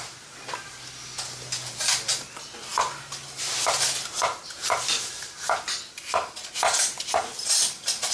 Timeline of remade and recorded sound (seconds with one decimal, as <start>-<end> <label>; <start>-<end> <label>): 0.0-8.1 recorded